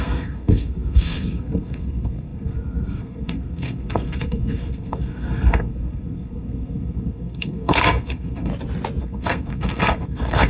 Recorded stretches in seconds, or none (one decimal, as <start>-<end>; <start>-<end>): 8.5-9.0